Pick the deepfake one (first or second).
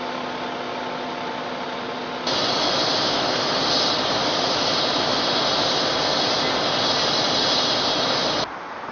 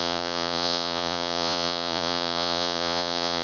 second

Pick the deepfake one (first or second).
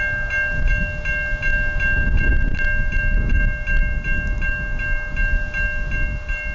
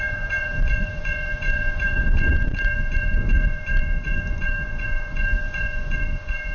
second